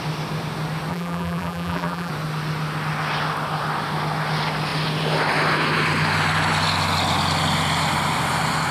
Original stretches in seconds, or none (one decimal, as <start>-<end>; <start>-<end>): 0.0-0.9; 2.1-8.7